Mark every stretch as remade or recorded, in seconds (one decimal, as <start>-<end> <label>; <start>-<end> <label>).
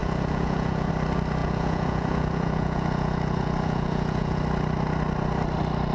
0.0-0.9 remade; 0.9-1.4 recorded; 1.4-4.4 remade; 4.4-5.9 recorded